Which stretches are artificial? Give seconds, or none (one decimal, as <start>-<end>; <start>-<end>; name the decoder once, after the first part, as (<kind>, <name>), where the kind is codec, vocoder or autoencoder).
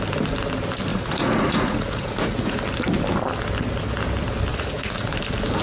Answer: 0.9-2.6 (vocoder, Vocos); 4.5-5.1